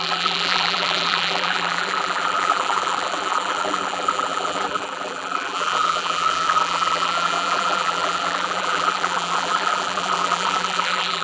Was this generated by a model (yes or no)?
yes